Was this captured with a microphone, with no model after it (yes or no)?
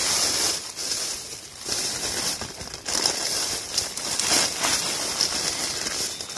yes